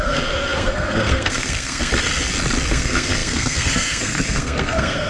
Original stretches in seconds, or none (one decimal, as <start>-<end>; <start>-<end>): 1.9-2.7